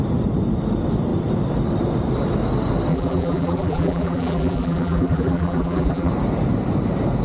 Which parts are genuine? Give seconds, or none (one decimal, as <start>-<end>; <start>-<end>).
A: 0.0-2.9; 6.1-7.2